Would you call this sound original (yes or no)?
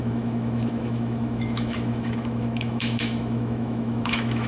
no